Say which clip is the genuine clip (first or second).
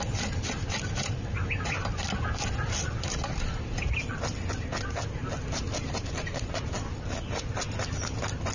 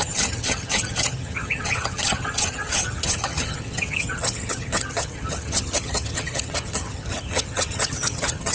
first